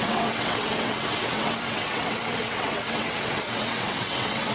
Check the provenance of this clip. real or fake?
fake